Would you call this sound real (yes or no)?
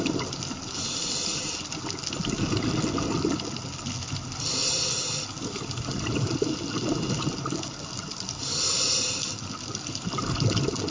yes